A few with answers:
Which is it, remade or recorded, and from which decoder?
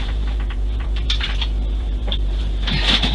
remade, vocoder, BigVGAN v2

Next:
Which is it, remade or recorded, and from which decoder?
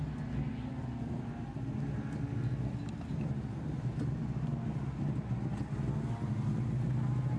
recorded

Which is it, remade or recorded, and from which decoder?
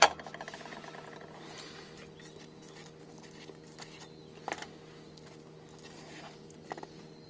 recorded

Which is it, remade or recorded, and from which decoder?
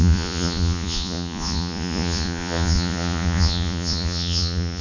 remade, vocoder, Vocos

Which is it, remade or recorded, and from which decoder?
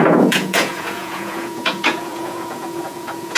remade, vocoder, Vocos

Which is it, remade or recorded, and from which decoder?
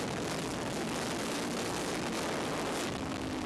recorded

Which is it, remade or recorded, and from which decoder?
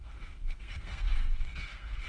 remade, codec, SNAC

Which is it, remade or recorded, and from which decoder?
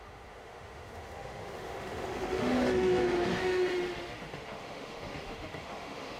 remade, autoencoder, DAC-VAE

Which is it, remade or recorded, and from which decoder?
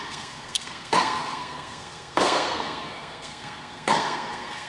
remade, codec, SNAC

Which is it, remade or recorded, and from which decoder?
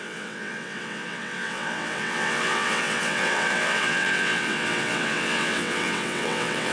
remade, vocoder, WaveNeXt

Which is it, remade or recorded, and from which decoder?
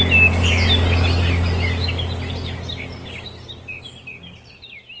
recorded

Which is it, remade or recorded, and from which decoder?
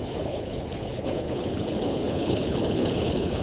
remade, codec, HILCodec